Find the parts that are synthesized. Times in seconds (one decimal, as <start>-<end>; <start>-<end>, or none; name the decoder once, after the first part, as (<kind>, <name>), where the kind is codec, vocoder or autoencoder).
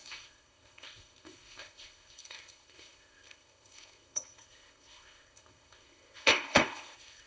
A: 0.0-7.3 (codec, ZipCodec)